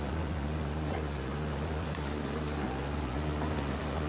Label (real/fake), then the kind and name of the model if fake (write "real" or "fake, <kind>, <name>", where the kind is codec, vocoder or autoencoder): fake, vocoder, Vocos